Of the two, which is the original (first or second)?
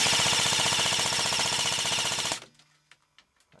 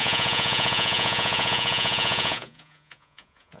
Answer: first